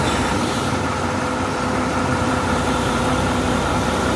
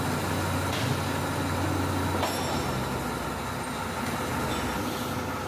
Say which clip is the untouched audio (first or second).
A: second